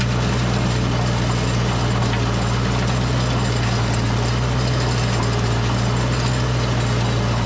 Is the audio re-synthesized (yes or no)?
no